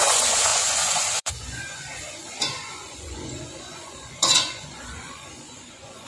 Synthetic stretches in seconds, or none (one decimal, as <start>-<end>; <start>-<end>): 0.0-6.1